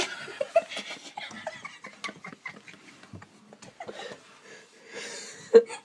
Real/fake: real